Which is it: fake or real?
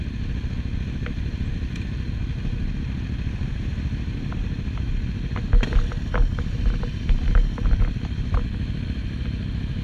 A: real